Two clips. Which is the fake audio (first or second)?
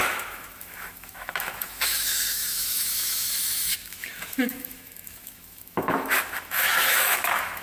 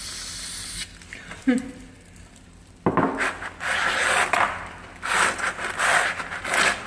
first